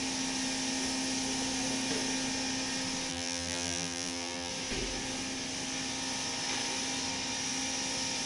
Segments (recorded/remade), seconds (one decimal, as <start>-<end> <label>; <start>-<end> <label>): 0.0-3.1 recorded; 3.1-4.5 remade; 4.5-8.3 recorded